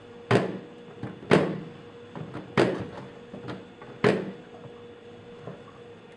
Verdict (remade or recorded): recorded